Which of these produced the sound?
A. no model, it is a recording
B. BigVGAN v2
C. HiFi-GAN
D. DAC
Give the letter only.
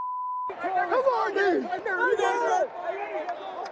A